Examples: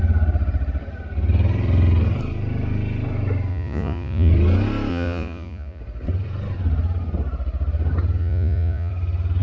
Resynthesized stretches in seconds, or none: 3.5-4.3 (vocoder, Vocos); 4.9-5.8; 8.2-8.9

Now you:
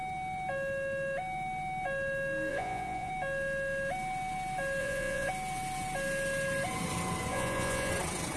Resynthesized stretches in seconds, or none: 2.5-3.1 (vocoder, Vocos); 4.8-5.3; 7.3-7.9

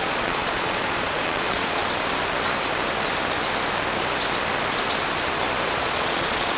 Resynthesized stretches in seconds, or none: 0.0-1.8 (vocoder, Vocos); 5.8-6.6

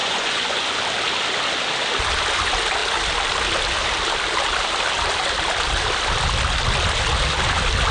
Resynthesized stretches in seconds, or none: 0.0-0.8 (vocoder, Vocos)

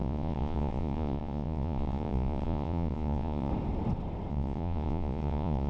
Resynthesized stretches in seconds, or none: 0.0-3.5 (vocoder, Vocos); 4.3-5.7